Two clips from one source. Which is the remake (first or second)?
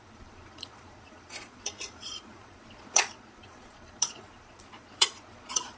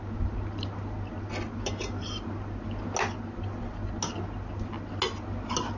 first